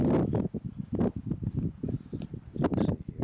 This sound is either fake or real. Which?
real